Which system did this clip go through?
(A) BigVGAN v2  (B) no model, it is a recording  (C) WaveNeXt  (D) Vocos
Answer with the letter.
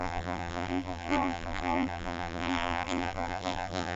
A